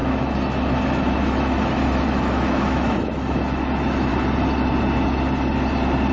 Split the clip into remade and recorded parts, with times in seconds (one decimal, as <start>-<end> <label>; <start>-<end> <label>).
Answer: 0.0-4.1 remade; 4.1-6.1 recorded